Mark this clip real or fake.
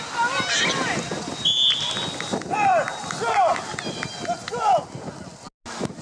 real